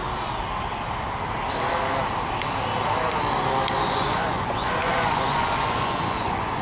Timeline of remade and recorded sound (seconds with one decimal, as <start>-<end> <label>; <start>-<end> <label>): 0.0-3.8 recorded; 3.8-6.6 remade